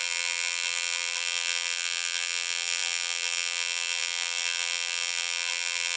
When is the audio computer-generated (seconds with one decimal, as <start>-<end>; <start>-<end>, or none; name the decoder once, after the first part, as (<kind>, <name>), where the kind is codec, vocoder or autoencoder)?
0.0-6.0 (vocoder, BigVGAN v2)